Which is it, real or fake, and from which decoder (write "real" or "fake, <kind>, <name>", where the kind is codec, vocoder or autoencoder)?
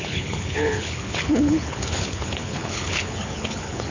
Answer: fake, codec, HILCodec